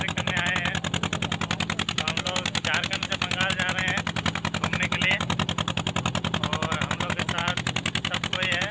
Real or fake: real